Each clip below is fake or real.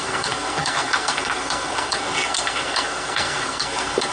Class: fake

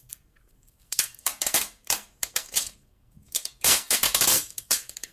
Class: fake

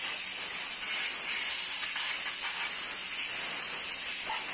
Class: real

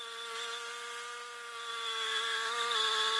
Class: real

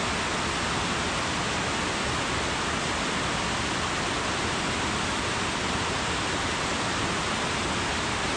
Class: real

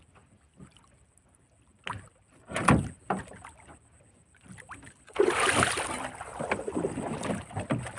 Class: real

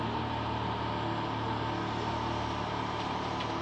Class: real